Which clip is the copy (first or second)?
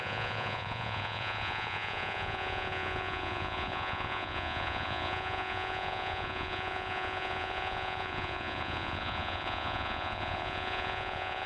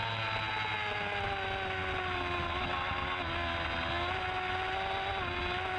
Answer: first